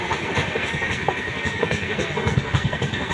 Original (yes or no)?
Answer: no